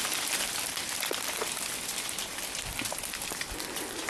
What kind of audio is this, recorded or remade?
recorded